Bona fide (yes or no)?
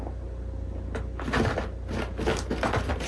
yes